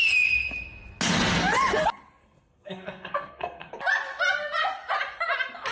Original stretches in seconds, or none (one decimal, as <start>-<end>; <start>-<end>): 0.0-2.2; 3.8-5.7